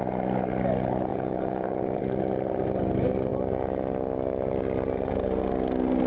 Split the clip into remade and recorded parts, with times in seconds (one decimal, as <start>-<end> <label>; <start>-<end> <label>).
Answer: 0.0-1.1 recorded; 1.1-2.0 remade; 2.0-6.1 recorded